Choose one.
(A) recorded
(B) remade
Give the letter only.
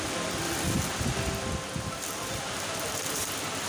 A